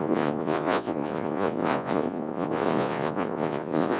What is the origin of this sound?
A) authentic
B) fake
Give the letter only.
B